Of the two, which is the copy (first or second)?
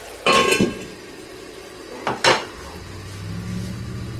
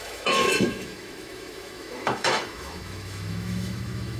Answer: second